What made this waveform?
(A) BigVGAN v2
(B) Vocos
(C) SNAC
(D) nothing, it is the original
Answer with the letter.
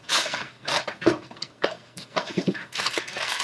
C